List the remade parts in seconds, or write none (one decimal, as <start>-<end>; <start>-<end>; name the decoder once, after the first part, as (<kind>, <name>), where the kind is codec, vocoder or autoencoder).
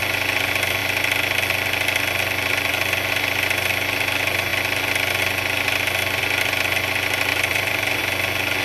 7.3-8.0 (vocoder, BigVGAN v2)